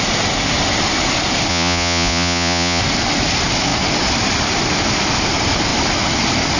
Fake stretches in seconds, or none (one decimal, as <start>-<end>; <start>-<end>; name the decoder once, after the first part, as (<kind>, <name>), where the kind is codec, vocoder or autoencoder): 1.5-2.8 (vocoder, Vocos)